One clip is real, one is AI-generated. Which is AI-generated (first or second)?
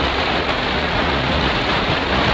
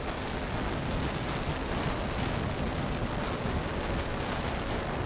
first